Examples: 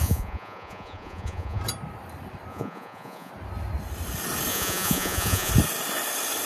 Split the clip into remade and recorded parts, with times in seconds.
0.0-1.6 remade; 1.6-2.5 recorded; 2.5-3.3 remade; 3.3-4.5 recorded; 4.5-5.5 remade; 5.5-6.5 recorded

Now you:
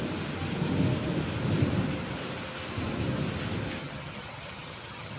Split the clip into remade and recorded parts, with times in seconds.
0.0-3.8 recorded; 3.8-5.2 remade

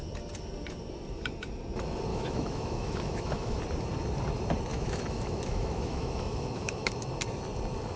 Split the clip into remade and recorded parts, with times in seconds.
0.0-2.1 recorded; 2.1-3.6 remade; 3.6-4.7 recorded; 4.7-6.9 remade; 6.9-8.0 recorded

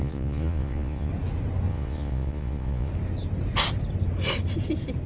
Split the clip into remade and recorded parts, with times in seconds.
0.0-1.1 remade; 1.1-1.7 recorded; 1.7-2.9 remade; 2.9-5.1 recorded

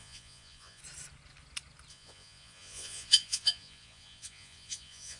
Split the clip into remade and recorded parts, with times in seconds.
0.0-0.8 remade; 0.8-1.9 recorded; 1.9-5.2 remade